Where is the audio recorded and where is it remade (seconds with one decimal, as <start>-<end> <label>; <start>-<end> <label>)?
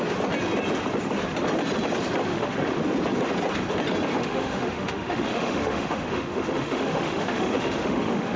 0.0-2.3 recorded; 2.3-2.8 remade; 2.8-4.2 recorded; 4.2-8.4 remade